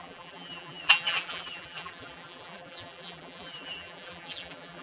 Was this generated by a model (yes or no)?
yes